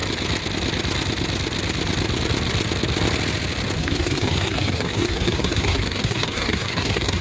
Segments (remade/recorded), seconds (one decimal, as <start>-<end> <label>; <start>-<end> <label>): 0.0-3.8 recorded; 3.8-7.2 remade